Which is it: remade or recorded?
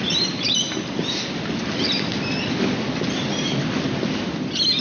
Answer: recorded